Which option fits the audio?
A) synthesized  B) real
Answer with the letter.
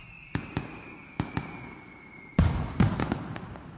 B